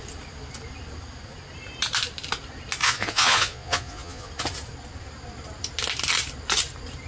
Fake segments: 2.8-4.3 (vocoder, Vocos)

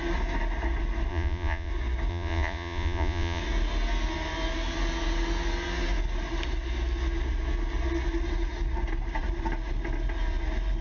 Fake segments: 1.1-1.7 (vocoder, Vocos); 2.1-3.4

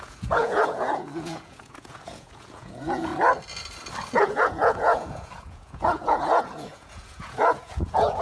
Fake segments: 0.0-3.1 (vocoder, Vocos); 4.1-8.2

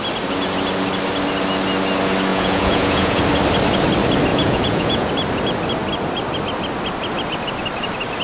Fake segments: 2.3-3.2 (vocoder, Vocos); 4.3-5.1

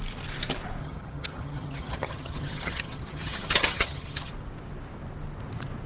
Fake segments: 0.8-4.3 (vocoder, HiFi-GAN)

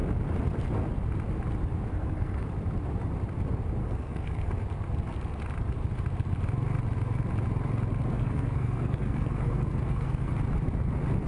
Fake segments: 1.9-2.5 (codec, SNAC); 3.8-4.5; 8.1-10.3